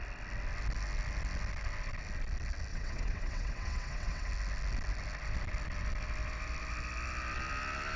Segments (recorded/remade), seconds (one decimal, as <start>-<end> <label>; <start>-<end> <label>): 0.0-2.7 recorded; 2.7-4.3 remade; 4.3-8.0 recorded

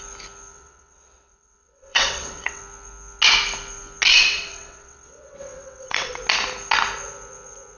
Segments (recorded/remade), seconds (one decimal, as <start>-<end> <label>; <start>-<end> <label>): 0.0-0.5 recorded; 0.5-2.6 remade; 2.6-4.1 recorded; 4.1-6.2 remade; 6.2-7.8 recorded

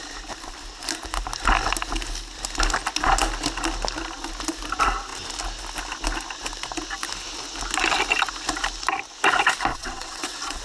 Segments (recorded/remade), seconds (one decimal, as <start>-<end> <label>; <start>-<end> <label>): 0.0-9.7 recorded; 9.7-10.6 remade

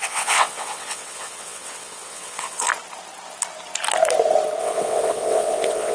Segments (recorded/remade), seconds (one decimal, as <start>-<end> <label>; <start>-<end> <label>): 0.0-2.7 remade; 2.7-4.6 recorded; 4.6-5.9 remade